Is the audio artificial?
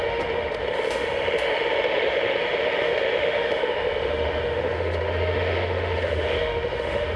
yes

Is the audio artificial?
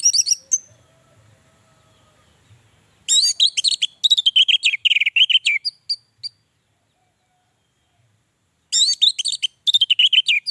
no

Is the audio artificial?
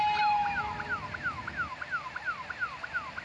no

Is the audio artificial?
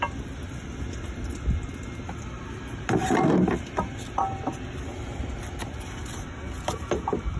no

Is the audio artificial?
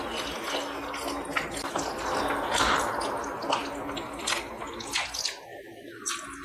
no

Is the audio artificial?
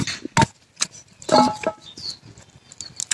no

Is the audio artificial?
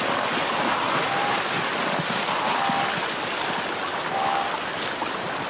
no